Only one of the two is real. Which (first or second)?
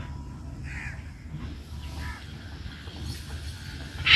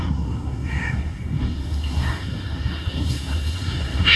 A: first